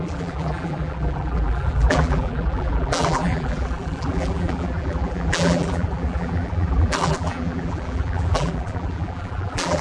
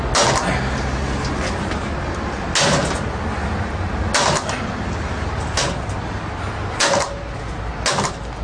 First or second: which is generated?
first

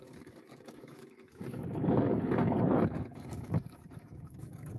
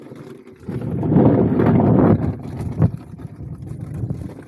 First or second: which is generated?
first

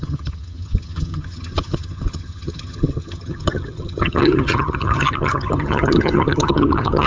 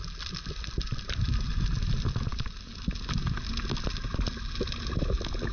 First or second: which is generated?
first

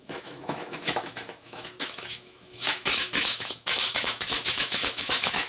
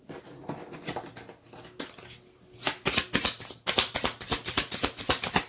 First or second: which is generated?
first